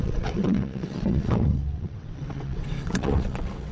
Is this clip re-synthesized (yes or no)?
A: yes